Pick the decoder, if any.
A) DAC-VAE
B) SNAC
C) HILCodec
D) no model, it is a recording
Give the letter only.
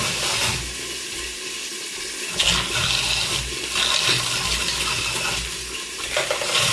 D